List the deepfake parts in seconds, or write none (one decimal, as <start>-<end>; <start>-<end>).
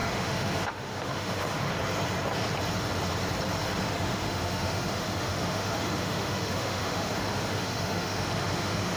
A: 0.0-1.7; 3.8-9.0